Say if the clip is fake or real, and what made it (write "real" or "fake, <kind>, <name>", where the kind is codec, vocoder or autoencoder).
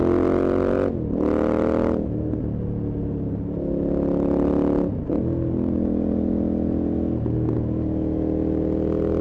real